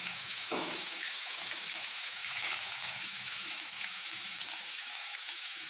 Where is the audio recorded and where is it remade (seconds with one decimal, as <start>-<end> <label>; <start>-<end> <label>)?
0.0-5.7 remade